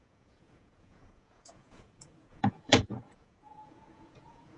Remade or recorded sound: remade